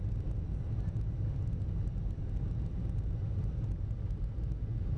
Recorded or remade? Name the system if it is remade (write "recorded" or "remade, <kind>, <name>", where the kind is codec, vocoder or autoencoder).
recorded